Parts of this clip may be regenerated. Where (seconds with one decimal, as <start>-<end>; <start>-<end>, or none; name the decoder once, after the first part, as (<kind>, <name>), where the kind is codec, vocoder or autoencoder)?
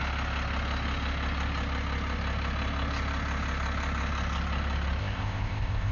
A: 5.0-5.9 (codec, ZipCodec)